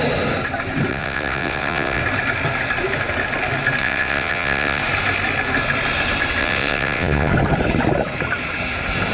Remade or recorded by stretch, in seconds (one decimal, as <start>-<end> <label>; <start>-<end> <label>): 0.0-0.9 recorded; 0.9-2.0 remade; 2.0-3.8 recorded; 3.8-4.8 remade; 4.8-6.4 recorded; 6.4-7.3 remade; 7.3-9.1 recorded